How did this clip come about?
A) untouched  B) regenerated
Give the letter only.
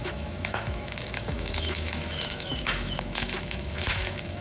B